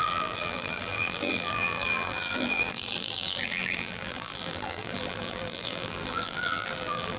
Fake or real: fake